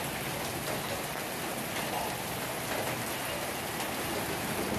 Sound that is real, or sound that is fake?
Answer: real